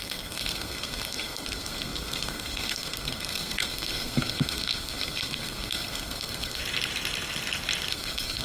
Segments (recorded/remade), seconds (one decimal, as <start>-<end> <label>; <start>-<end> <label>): 0.0-6.6 remade; 6.6-7.9 recorded; 7.9-8.4 remade